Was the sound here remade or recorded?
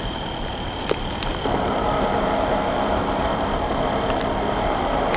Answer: remade